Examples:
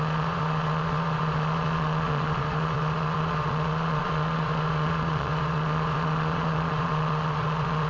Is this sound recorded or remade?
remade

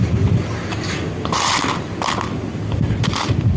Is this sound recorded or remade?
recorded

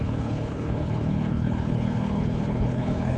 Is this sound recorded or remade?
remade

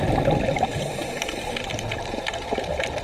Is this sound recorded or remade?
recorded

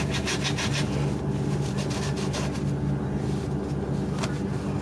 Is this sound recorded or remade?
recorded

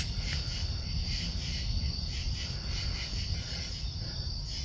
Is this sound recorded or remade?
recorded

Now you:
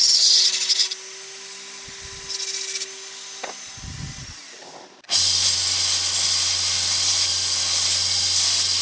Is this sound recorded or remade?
recorded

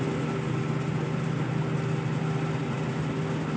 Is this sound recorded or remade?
recorded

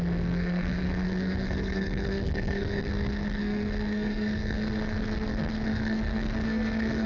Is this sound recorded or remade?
remade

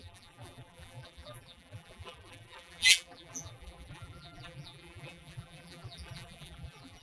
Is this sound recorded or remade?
remade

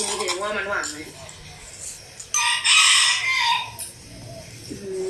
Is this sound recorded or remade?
recorded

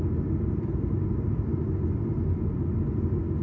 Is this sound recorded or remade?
recorded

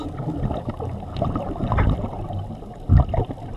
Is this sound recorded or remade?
recorded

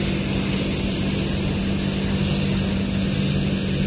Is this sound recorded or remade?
recorded